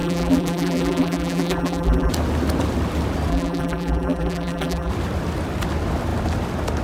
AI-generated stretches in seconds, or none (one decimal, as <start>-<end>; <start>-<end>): 0.0-2.1; 3.3-4.9